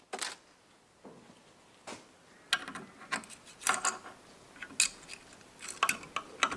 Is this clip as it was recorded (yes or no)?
yes